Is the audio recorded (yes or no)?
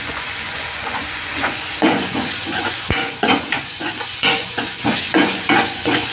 no